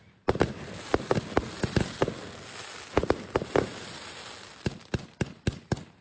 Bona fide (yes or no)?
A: yes